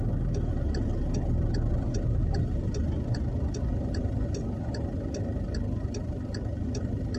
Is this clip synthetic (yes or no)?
no